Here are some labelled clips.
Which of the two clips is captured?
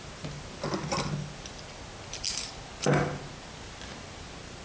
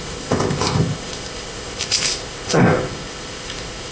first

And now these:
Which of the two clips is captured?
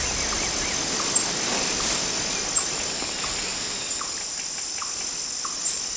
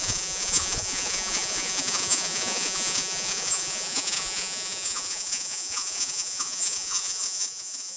first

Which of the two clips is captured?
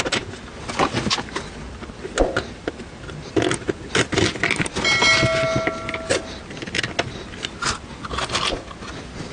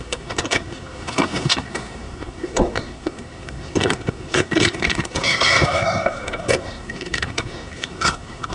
first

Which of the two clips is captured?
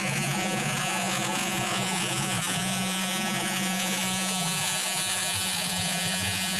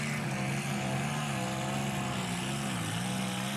second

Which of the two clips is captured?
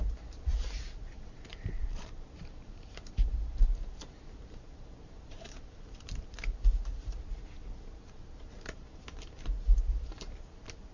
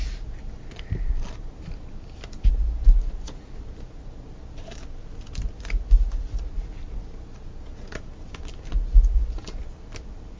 second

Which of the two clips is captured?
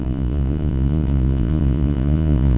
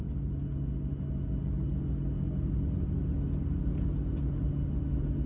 second